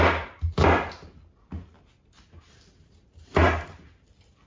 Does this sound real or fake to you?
real